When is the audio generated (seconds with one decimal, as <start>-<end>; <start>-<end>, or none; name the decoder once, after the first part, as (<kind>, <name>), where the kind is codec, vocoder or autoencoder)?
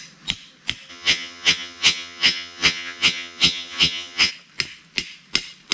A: 0.9-4.3 (vocoder, HiFi-GAN)